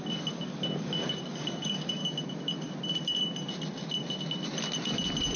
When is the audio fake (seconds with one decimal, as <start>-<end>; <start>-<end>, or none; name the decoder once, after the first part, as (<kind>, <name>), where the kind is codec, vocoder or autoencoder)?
0.0-2.0 (codec, DAC)